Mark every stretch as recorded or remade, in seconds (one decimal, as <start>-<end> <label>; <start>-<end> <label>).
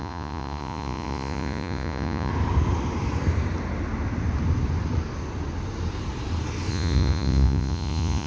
0.0-2.3 remade; 2.3-6.7 recorded; 6.7-8.3 remade